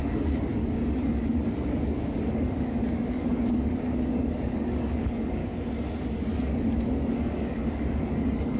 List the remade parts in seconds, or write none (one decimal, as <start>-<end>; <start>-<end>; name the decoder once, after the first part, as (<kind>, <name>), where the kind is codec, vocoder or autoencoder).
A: 0.0-5.4 (codec, DAC); 6.0-8.6

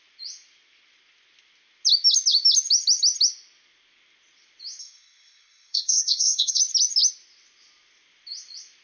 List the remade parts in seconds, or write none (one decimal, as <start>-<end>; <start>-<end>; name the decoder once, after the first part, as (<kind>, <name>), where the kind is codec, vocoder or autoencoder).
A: 4.8-6.6 (codec, SNAC)

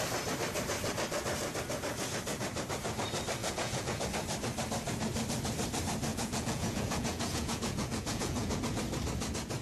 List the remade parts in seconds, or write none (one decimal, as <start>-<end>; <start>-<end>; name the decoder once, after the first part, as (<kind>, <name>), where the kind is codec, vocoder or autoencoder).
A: 3.4-4.0 (vocoder, Vocos); 6.1-8.6

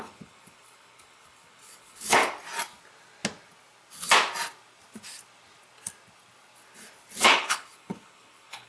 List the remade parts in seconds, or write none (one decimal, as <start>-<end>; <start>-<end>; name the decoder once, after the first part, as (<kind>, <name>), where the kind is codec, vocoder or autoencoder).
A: 0.0-2.2 (codec, HILCodec); 7.2-8.7